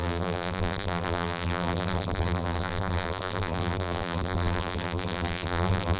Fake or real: fake